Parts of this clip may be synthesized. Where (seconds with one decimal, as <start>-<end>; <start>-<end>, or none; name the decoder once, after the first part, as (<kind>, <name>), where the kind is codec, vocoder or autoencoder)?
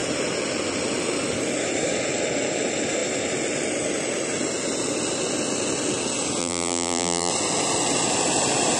6.4-7.3 (vocoder, BigVGAN v2)